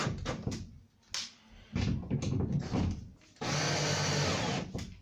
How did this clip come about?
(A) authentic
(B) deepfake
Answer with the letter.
A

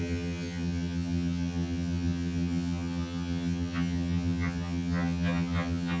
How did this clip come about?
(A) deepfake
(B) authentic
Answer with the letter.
A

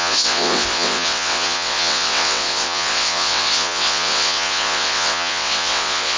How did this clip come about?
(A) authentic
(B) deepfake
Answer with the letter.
B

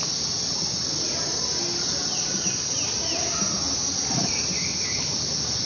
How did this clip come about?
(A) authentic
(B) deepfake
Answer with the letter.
A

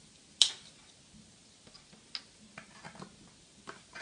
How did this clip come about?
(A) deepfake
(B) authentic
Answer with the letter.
B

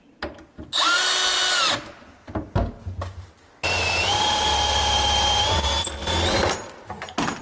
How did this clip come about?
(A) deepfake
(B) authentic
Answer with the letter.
B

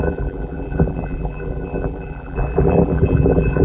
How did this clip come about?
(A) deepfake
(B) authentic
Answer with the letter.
A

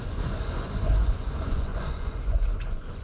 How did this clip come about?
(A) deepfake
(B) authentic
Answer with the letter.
A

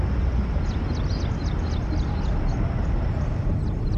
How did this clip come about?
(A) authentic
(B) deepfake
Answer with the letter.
A